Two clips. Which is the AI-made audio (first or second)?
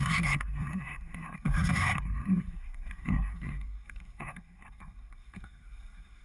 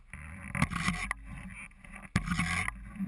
first